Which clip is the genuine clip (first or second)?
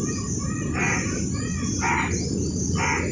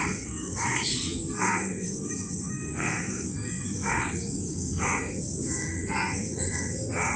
first